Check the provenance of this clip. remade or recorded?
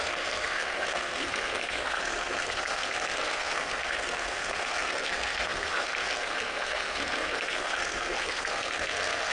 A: remade